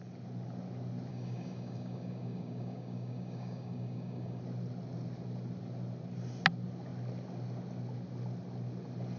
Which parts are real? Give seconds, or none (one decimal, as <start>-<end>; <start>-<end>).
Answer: 0.0-1.1; 4.4-9.2